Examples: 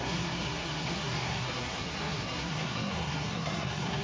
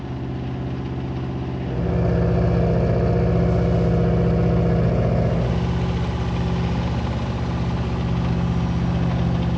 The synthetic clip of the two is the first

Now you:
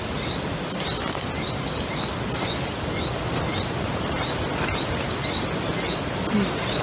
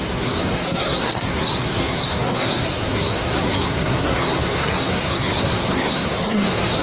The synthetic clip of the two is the second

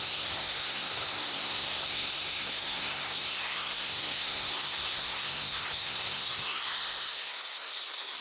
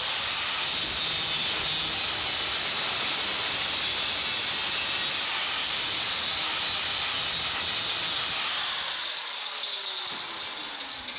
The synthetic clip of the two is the first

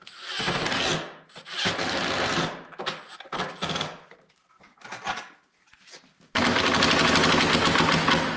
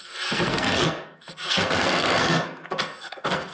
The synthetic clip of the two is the second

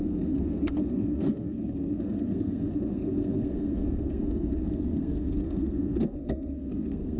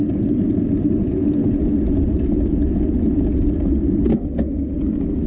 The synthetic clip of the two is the first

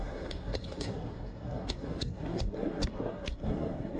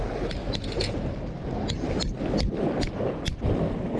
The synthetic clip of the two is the first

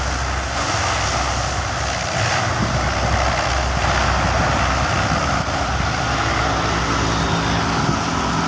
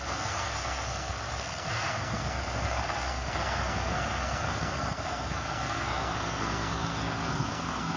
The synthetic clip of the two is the second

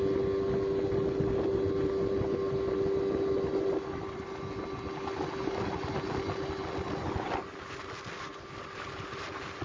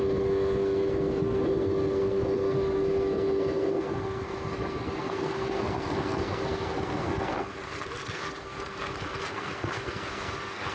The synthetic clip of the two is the second